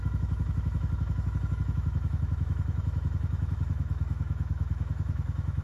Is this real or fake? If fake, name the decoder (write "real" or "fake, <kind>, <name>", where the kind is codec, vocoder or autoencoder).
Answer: fake, autoencoder, DAC-VAE